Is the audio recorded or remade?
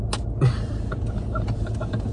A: recorded